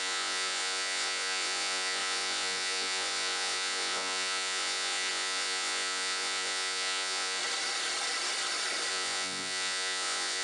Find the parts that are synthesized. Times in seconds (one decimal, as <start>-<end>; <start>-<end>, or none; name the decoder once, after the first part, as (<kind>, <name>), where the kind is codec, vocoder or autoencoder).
0.0-7.4 (vocoder, Vocos); 8.9-10.4